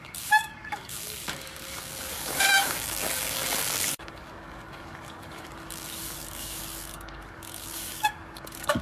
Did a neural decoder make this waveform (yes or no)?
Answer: yes